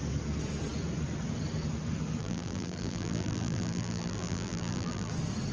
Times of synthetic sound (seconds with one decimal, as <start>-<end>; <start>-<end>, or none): 2.2-5.1